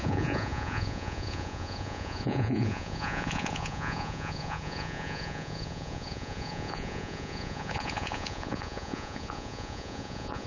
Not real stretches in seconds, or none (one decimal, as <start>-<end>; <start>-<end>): 0.0-10.5